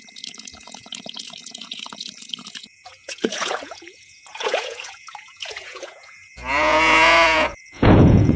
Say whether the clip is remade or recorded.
remade